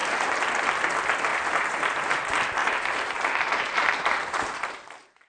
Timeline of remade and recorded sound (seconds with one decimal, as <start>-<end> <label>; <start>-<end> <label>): 0.0-0.5 remade; 0.5-1.3 recorded; 1.3-2.2 remade; 2.2-2.6 recorded; 2.6-5.3 remade